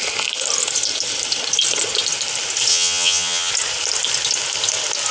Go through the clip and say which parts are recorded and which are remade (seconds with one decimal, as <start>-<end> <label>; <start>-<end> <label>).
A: 0.0-2.7 recorded; 2.7-3.5 remade; 3.5-5.1 recorded